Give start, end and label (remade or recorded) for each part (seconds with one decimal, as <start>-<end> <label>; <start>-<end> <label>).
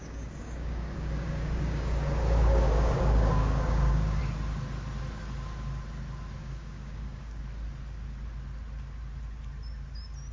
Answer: 0.0-4.2 remade; 4.2-6.4 recorded; 6.4-7.4 remade; 7.4-10.3 recorded